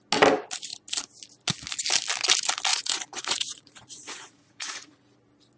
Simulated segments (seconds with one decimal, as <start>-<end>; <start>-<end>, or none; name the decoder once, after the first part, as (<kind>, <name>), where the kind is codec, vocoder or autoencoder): 2.7-5.0 (vocoder, Vocos)